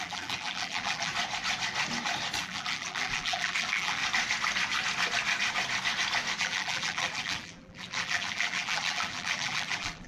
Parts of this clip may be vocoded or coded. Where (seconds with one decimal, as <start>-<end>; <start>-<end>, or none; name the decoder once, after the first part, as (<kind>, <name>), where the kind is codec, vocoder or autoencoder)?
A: 0.0-1.1 (vocoder, BigVGAN v2); 2.4-4.0; 6.4-10.1